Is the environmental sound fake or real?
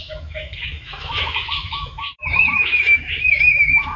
fake